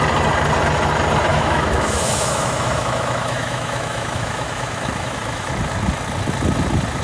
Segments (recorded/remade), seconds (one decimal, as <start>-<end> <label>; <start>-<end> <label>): 0.0-1.3 recorded; 1.3-5.5 remade; 5.5-7.0 recorded